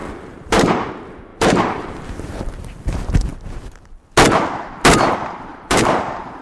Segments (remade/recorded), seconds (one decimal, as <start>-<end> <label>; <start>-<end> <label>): 0.0-0.9 remade; 0.9-1.3 recorded; 1.3-2.9 remade; 2.9-5.5 recorded; 5.5-6.4 remade